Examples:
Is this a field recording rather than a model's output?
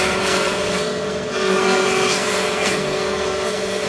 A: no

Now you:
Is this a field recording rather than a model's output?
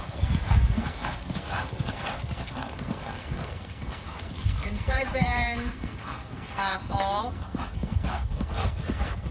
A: no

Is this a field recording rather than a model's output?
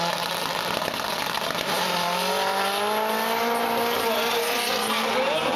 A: yes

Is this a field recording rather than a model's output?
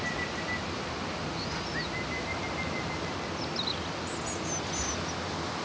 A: yes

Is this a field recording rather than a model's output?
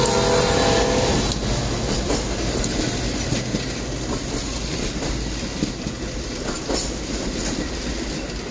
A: yes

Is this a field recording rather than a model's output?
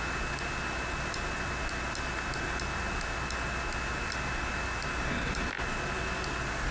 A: yes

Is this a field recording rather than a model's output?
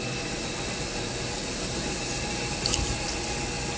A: yes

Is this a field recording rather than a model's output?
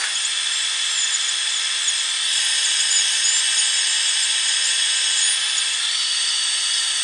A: yes